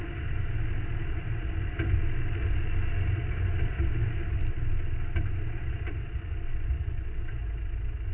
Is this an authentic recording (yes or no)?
yes